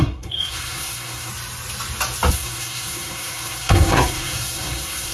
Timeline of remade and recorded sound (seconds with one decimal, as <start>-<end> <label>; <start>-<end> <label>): 0.0-1.3 remade; 1.3-2.3 recorded; 2.3-5.1 remade